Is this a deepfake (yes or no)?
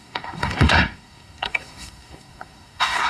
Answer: yes